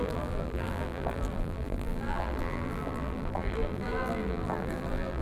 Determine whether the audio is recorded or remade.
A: remade